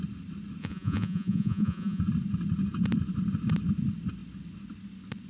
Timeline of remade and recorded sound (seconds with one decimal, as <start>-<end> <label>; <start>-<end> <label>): 0.0-0.6 recorded; 0.6-2.0 remade; 2.0-5.3 recorded